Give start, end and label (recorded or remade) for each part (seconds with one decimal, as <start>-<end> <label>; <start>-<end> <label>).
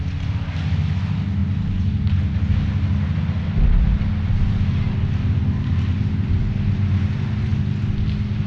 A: 0.0-8.5 recorded